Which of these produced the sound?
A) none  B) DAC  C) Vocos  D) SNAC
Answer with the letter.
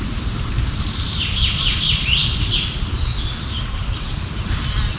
A